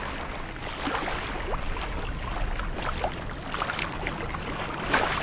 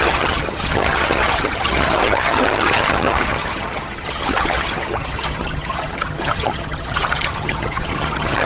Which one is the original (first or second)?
first